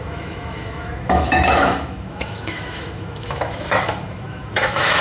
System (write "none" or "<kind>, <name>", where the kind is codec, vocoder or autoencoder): autoencoder, DAC-VAE